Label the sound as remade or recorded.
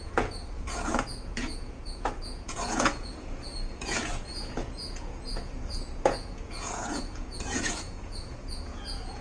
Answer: remade